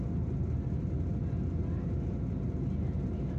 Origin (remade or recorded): recorded